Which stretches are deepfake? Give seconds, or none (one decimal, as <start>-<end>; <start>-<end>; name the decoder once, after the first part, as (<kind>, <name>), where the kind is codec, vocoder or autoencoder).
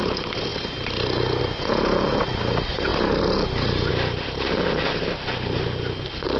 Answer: none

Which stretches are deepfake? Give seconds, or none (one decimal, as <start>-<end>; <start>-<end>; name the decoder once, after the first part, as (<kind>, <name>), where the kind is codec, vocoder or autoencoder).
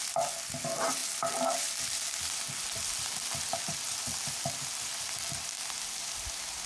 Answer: none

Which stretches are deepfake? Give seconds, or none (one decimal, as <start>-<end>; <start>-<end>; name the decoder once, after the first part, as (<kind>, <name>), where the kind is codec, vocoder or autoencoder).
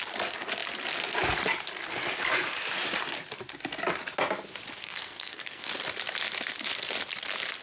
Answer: 4.8-5.7 (codec, SNAC)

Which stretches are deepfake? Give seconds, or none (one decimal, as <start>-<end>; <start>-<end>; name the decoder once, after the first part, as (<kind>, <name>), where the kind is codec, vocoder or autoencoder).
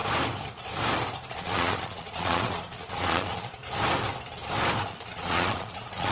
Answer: 1.3-3.6 (vocoder, Vocos); 4.8-6.1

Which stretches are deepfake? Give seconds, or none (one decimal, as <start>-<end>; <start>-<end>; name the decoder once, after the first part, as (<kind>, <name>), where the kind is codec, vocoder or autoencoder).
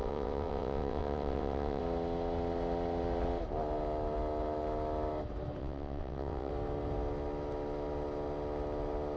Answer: 0.0-1.8 (vocoder, WaveNeXt); 5.6-6.5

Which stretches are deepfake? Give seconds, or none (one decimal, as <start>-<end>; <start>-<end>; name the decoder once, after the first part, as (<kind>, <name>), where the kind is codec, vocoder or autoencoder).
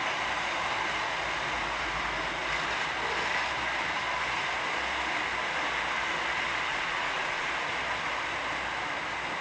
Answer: 6.7-7.5 (vocoder, Vocos)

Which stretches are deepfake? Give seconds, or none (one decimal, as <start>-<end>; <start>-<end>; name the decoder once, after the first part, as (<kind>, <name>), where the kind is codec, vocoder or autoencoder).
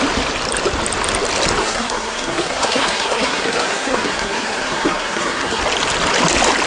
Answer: 1.6-5.6 (codec, SNAC)